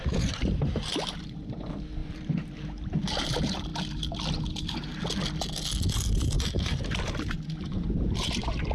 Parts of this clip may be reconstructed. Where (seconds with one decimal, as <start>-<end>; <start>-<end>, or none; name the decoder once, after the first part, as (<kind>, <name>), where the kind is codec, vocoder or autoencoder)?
0.0-3.7 (vocoder, BigVGAN v2); 4.5-4.9; 6.1-8.7